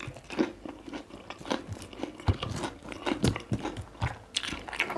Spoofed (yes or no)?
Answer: no